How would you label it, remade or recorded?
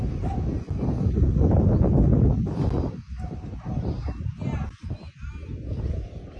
recorded